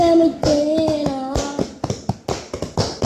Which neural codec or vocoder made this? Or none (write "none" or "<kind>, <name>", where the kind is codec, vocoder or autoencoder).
none